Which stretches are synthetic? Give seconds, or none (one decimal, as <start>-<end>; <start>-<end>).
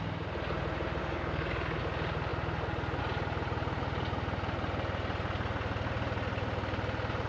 1.0-1.8